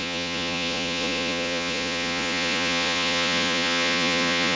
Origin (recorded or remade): remade